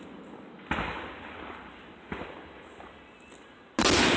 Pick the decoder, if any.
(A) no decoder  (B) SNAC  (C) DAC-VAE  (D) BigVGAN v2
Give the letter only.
A